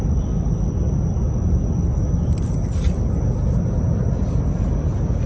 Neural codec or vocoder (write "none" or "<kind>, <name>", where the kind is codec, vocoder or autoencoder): none